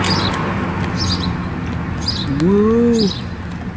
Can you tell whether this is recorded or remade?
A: recorded